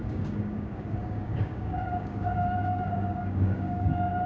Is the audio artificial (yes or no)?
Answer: yes